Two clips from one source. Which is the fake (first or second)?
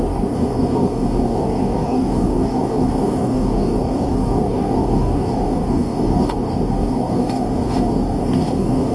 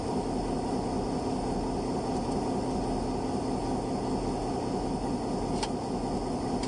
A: first